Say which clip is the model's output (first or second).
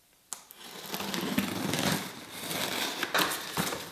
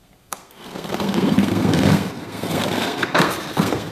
second